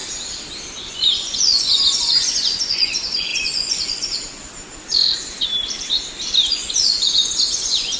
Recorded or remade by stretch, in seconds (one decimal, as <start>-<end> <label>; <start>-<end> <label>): 0.0-0.9 recorded; 0.9-4.4 remade; 4.4-6.5 recorded; 6.5-8.0 remade